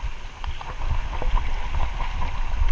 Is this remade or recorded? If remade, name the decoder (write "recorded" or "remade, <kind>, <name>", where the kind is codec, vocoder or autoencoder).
recorded